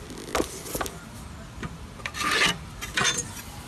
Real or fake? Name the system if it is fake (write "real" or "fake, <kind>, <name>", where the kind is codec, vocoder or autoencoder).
real